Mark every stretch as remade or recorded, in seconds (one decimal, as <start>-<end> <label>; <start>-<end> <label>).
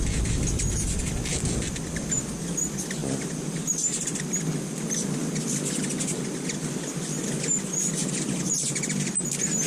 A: 0.0-3.0 recorded; 3.0-4.2 remade; 4.2-8.0 recorded; 8.0-8.7 remade; 8.7-9.7 recorded